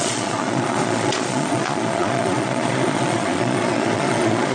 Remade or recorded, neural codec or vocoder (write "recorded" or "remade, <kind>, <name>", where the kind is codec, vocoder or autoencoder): remade, vocoder, Vocos